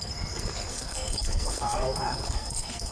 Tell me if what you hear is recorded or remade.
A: remade